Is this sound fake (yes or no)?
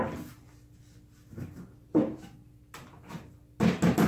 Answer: no